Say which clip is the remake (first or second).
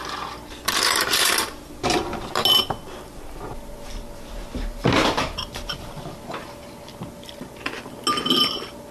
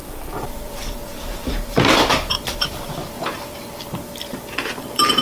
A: second